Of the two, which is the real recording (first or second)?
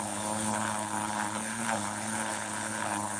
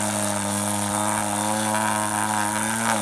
second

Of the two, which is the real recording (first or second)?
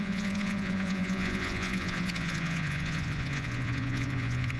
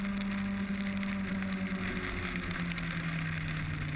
second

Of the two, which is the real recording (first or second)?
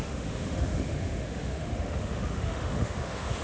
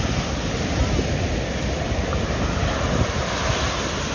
second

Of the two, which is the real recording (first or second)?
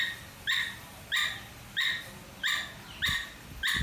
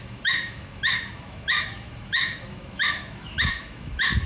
first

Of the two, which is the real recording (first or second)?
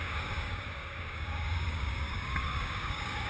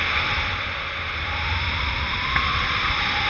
second